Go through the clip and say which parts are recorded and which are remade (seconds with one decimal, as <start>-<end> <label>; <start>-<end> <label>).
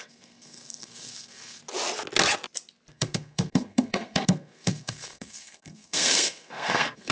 0.0-1.6 remade; 1.6-2.9 recorded; 2.9-7.1 remade